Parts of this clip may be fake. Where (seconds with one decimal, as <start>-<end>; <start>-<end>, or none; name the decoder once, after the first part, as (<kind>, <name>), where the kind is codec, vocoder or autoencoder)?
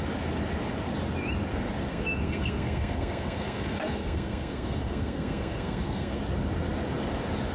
1.9-6.2 (codec, SNAC)